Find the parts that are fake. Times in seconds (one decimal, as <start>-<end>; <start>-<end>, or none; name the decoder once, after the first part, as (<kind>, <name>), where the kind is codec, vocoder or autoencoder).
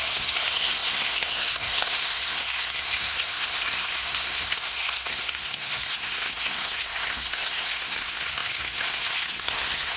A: 0.0-10.0 (codec, SNAC)